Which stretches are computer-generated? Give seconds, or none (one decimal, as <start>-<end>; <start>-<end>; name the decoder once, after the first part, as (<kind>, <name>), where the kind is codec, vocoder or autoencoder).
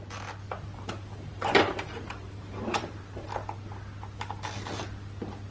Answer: 0.7-3.2 (vocoder, BigVGAN v2)